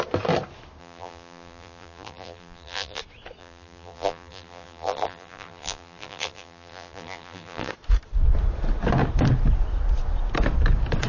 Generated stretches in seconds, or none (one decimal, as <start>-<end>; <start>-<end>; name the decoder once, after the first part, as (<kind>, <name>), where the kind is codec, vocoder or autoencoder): 0.8-3.0 (vocoder, BigVGAN v2); 3.4-7.7